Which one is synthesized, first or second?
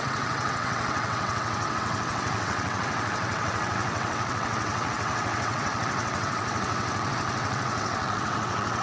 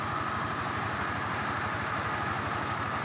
first